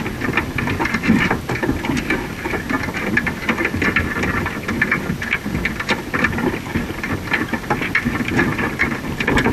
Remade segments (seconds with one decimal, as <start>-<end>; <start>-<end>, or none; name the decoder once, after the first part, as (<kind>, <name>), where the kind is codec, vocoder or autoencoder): 8.5-9.1 (vocoder, BigVGAN v2)

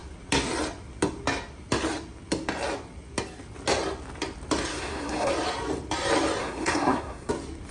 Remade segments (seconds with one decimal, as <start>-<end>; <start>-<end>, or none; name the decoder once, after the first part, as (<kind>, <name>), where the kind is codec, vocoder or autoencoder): 4.7-5.3 (codec, SNAC); 6.4-7.3

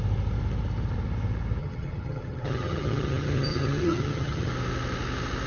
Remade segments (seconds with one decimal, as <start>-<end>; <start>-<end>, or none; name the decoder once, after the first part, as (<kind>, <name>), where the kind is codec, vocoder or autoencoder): 1.6-4.5 (vocoder, HiFi-GAN)

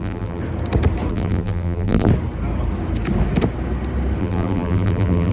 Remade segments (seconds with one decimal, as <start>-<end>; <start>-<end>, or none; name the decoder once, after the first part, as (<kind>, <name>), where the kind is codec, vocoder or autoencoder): 0.0-0.4 (vocoder, BigVGAN v2); 1.1-2.1; 4.2-5.3

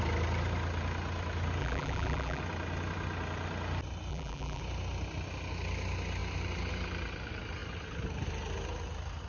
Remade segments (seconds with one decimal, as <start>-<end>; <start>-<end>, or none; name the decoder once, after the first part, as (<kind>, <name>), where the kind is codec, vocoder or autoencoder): 1.6-2.4 (vocoder, BigVGAN v2); 4.1-4.6

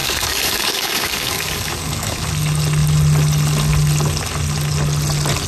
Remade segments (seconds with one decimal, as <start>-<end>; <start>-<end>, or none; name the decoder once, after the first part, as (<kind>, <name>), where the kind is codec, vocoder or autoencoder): 0.0-2.3 (codec, DAC)

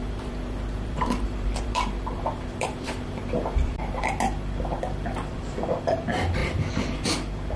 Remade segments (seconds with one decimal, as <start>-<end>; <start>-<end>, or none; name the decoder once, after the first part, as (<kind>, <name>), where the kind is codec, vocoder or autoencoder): 0.0-4.1 (vocoder, BigVGAN v2)